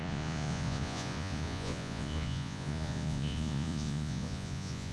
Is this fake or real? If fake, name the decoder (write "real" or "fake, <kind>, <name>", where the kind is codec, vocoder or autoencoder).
fake, vocoder, Vocos